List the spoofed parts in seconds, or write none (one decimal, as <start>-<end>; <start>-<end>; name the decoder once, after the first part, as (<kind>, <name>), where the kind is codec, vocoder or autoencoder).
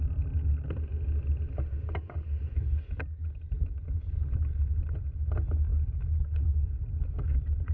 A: none